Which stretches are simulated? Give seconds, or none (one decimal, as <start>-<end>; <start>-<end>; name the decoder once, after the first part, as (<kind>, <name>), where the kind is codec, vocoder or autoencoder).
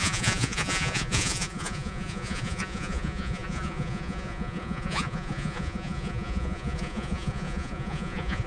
0.0-8.5 (vocoder, Vocos)